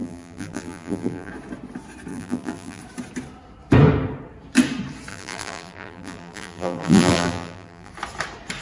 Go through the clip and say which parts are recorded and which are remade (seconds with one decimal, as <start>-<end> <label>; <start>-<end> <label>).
0.0-1.3 remade; 1.3-2.1 recorded; 2.1-2.8 remade; 2.8-5.1 recorded; 5.1-7.9 remade; 7.9-8.6 recorded